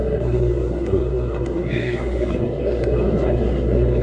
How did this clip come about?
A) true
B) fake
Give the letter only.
B